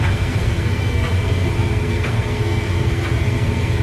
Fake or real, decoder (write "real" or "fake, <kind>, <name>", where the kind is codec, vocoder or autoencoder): fake, codec, SNAC